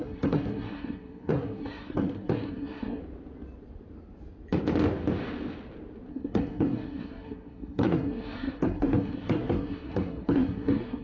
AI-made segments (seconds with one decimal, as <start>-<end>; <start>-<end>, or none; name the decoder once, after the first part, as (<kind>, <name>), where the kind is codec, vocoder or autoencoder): 0.0-3.0 (codec, SNAC); 6.1-11.0